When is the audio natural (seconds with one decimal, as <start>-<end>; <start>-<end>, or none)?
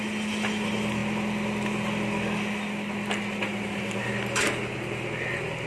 0.0-5.7